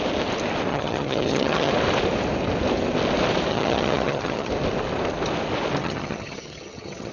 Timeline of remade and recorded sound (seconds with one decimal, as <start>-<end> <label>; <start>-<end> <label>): 0.0-0.7 recorded; 0.7-1.7 remade; 1.7-3.5 recorded; 3.5-4.5 remade; 4.5-5.8 recorded; 5.8-7.1 remade